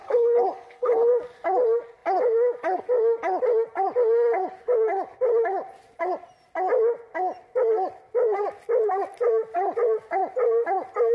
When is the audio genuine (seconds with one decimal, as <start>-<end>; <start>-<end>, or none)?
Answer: 1.1-11.1